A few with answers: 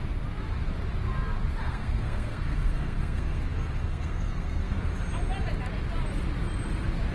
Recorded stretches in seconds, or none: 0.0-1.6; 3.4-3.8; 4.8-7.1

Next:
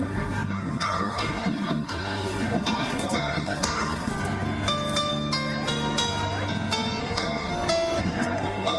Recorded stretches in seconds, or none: 4.1-7.0; 7.5-8.0

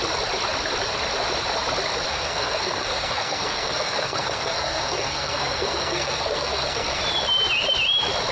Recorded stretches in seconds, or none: 0.0-2.1; 7.0-8.3